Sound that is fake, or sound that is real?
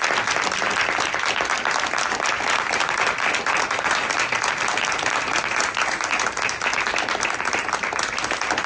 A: real